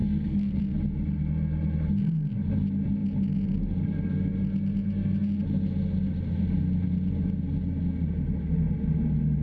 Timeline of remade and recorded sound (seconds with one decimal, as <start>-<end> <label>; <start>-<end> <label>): 0.0-0.6 remade; 0.6-9.4 recorded